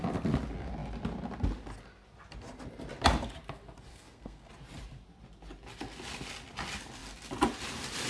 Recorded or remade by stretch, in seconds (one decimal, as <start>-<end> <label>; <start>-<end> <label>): 0.0-3.9 recorded; 3.9-4.5 remade; 4.5-8.1 recorded